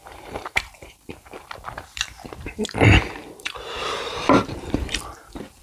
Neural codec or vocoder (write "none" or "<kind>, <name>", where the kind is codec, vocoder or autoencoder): vocoder, BigVGAN v2